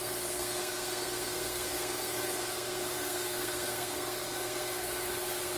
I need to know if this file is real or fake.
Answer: fake